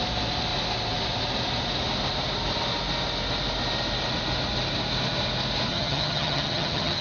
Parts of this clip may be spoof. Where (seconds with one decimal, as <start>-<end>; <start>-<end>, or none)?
5.7-7.0